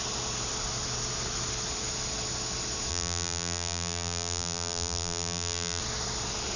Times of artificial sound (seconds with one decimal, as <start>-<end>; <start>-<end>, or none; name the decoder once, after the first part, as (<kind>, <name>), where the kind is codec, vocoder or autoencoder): 2.9-5.8 (vocoder, BigVGAN v2)